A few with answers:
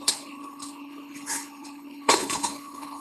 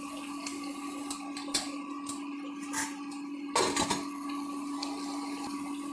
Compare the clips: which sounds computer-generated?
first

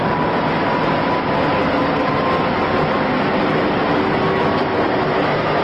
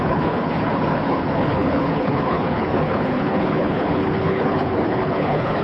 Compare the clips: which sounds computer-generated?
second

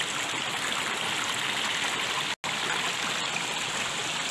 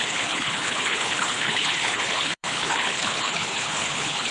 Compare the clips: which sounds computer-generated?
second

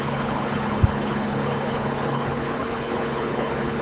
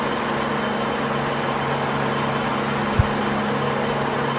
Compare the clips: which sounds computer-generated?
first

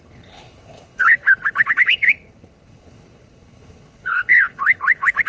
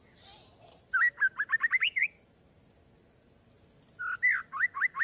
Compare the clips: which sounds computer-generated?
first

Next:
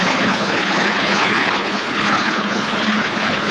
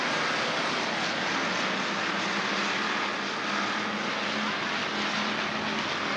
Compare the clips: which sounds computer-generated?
first